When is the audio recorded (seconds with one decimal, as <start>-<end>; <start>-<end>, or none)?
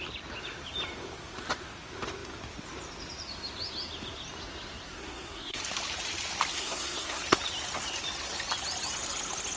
0.0-4.9; 5.6-6.5; 7.2-9.6